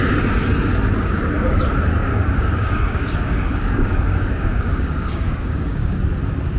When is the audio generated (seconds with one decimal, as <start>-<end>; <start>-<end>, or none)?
2.0-6.0